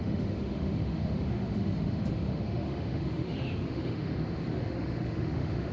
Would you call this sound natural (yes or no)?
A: no